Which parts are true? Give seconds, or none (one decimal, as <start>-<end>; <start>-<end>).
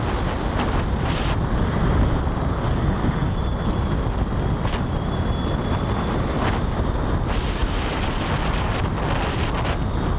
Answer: 0.0-10.2